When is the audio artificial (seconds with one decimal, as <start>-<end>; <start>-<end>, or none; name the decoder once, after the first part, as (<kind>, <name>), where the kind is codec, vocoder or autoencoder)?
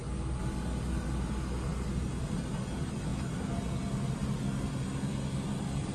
none